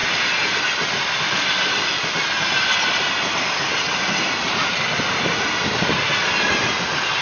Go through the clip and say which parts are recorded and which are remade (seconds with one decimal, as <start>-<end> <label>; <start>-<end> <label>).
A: 0.0-7.2 recorded

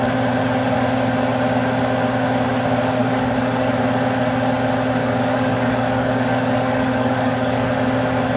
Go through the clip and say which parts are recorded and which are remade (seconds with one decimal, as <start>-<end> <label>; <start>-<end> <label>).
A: 0.0-3.0 recorded; 3.0-3.7 remade; 3.7-5.0 recorded; 5.0-7.7 remade; 7.7-8.4 recorded

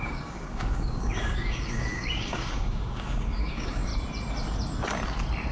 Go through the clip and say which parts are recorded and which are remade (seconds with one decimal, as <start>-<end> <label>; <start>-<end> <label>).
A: 0.0-3.9 remade; 3.9-5.5 recorded

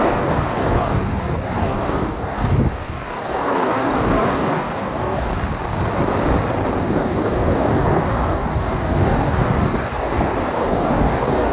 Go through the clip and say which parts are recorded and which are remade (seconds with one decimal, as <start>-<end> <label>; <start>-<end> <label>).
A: 0.0-5.3 remade; 5.3-6.8 recorded; 6.8-11.5 remade